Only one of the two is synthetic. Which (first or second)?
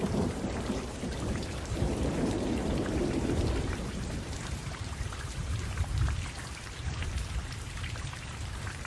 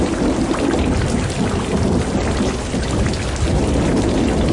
first